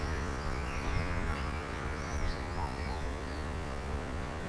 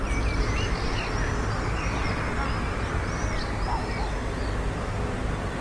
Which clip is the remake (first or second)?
first